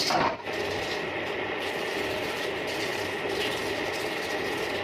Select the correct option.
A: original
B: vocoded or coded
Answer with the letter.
A